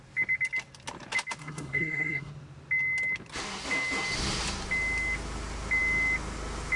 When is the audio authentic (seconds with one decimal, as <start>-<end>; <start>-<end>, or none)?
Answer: 0.0-1.4; 2.3-6.8